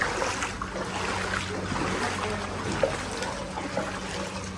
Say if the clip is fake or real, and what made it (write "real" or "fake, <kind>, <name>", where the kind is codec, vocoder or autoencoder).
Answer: real